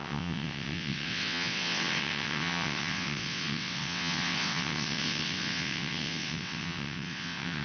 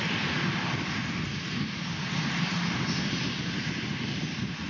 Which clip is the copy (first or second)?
first